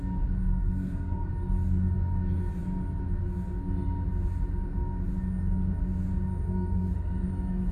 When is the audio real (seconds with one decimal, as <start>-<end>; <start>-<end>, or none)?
0.0-0.5; 1.3-6.5; 7.3-7.7